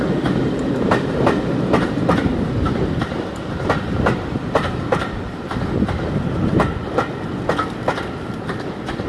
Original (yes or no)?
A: no